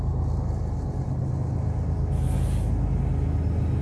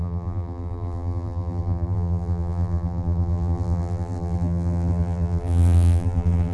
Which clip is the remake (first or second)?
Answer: second